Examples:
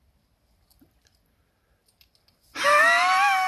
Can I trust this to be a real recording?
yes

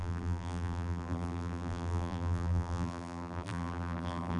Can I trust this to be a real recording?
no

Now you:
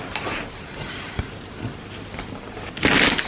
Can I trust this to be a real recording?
yes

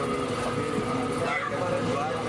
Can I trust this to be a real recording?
yes